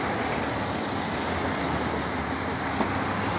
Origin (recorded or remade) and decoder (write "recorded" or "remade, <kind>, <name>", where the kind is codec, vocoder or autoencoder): recorded